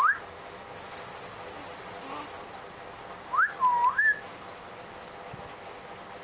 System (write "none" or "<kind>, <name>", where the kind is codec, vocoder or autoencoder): none